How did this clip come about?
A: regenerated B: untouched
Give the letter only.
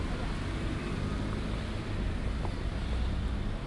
B